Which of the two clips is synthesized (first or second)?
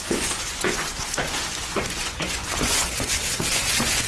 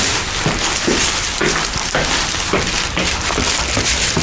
first